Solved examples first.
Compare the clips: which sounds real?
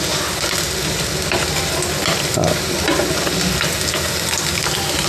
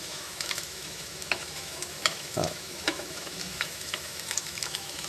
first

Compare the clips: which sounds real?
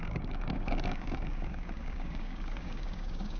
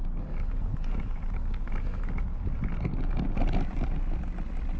second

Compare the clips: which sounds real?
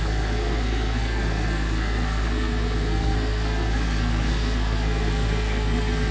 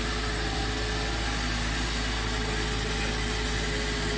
second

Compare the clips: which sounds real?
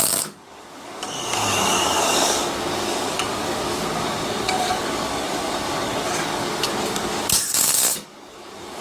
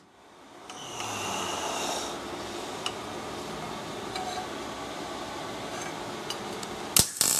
second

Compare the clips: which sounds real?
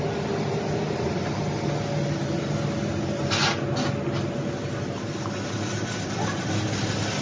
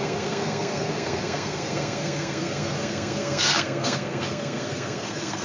first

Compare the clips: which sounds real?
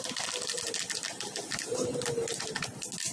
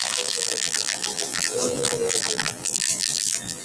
first